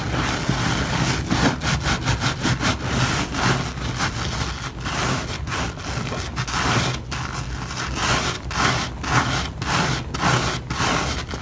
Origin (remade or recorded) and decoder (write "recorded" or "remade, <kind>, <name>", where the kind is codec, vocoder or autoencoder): recorded